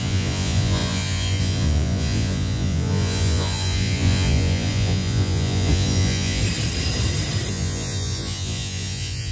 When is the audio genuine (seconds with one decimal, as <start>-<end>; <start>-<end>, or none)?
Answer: 6.4-7.5